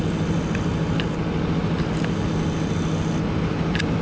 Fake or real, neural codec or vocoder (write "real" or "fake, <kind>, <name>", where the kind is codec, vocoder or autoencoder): real